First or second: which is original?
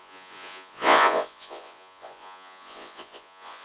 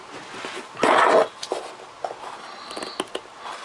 second